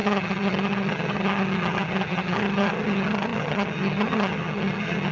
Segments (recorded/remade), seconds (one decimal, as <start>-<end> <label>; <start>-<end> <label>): 0.0-5.1 remade